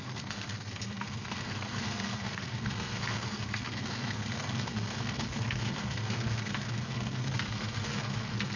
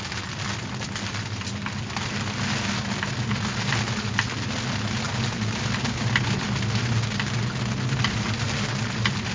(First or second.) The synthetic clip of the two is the first